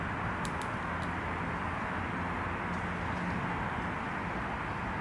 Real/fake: real